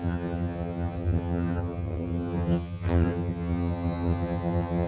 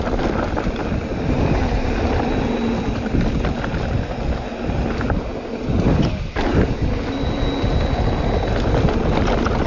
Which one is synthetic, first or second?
first